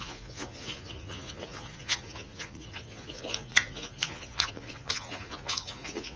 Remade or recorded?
remade